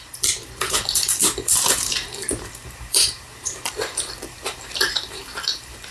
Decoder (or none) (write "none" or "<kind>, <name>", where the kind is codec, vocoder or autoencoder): vocoder, BigVGAN v2